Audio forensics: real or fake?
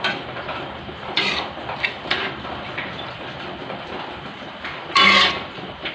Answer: fake